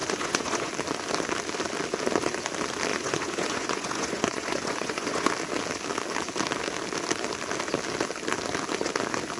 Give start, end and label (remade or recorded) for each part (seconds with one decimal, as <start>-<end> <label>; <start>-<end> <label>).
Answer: 0.0-0.7 remade; 0.7-2.9 recorded; 2.9-5.3 remade; 5.3-9.4 recorded

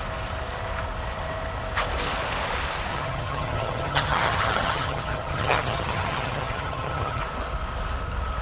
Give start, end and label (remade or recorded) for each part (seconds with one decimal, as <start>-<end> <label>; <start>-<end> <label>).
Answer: 0.0-2.9 recorded; 2.9-7.2 remade; 7.2-8.4 recorded

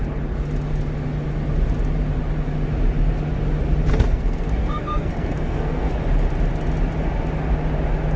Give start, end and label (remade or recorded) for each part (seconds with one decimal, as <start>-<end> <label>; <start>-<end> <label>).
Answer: 0.0-3.9 recorded; 3.9-5.9 remade; 5.9-8.2 recorded

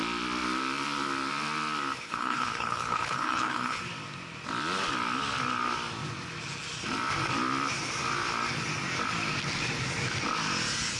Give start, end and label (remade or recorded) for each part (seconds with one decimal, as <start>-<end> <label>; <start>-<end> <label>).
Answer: 0.0-2.0 recorded; 2.0-3.8 remade; 3.8-11.0 recorded

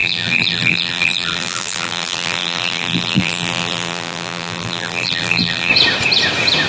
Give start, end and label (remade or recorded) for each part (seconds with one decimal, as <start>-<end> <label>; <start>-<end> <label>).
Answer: 0.0-5.7 remade; 5.7-6.7 recorded

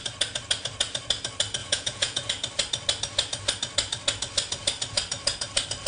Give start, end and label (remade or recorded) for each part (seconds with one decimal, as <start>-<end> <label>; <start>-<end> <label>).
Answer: 0.0-1.6 recorded; 1.6-2.3 remade; 2.3-5.9 recorded

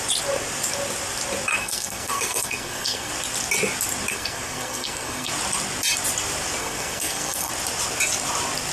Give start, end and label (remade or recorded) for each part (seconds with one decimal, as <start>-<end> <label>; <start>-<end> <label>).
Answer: 0.0-1.5 recorded; 1.5-3.1 remade; 3.1-4.1 recorded; 4.1-5.3 remade; 5.3-6.6 recorded; 6.6-7.5 remade; 7.5-8.7 recorded

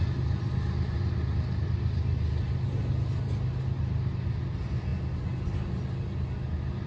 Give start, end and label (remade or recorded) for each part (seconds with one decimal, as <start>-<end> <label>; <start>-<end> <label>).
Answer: 0.0-6.9 recorded